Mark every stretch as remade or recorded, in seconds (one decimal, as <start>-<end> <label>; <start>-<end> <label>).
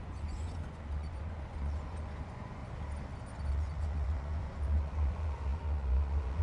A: 0.0-2.6 remade; 2.6-3.5 recorded; 3.5-6.4 remade